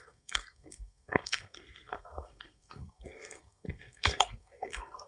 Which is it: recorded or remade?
remade